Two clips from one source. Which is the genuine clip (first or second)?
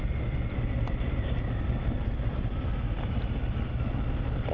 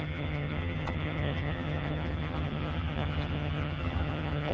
first